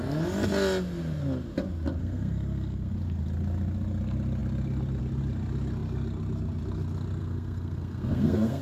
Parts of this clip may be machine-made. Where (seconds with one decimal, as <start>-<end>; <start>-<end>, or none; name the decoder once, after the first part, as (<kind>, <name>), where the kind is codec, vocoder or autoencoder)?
2.0-2.9 (codec, SNAC); 7.2-8.6